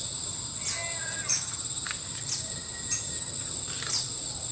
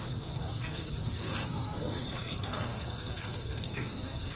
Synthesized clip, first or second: second